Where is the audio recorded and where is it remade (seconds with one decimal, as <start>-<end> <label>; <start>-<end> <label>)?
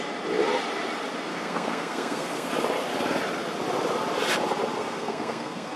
0.0-1.3 recorded; 1.3-2.5 remade; 2.5-4.8 recorded; 4.8-5.8 remade